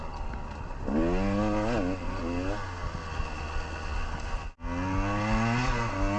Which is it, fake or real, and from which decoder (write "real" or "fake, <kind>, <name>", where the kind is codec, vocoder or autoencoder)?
real